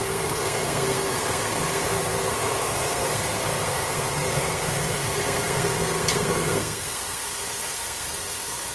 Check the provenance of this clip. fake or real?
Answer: fake